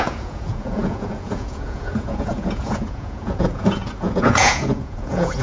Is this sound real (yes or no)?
no